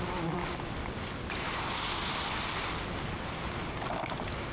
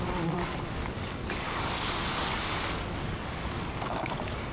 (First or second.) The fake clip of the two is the second